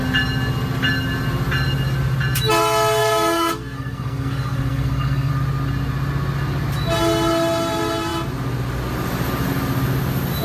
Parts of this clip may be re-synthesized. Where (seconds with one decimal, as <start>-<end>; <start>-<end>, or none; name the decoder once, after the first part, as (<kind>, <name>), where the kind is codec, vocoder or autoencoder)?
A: 3.0-5.3 (codec, SNAC)